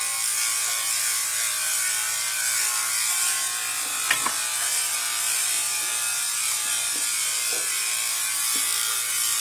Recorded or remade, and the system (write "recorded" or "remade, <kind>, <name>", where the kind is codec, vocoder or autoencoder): recorded